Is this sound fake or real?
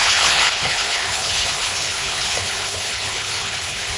fake